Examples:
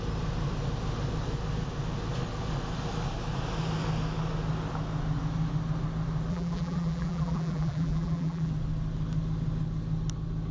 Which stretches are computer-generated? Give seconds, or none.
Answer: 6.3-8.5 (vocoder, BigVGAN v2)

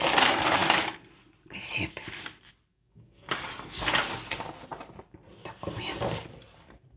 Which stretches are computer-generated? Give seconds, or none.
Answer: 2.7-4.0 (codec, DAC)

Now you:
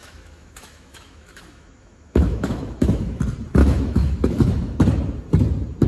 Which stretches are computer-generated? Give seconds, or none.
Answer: 0.0-3.2 (autoencoder, DAC-VAE); 3.6-4.8

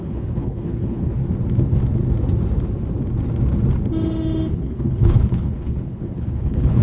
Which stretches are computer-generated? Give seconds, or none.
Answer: 0.0-1.2 (codec, HILCodec); 4.5-6.8

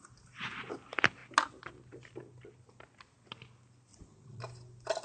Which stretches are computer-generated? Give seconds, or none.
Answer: 3.9-4.4 (vocoder, Vocos)

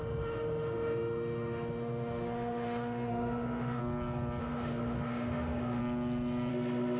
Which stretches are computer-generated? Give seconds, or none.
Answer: 0.0-3.8 (autoencoder, DAC-VAE); 4.4-5.8; 6.5-7.0

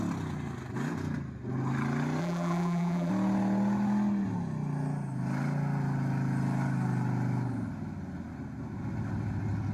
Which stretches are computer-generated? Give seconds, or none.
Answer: 2.2-3.1 (vocoder, BigVGAN v2)

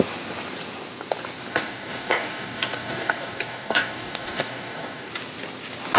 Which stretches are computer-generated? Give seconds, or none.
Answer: 1.5-5.1 (codec, DAC)